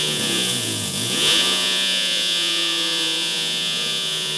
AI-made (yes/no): yes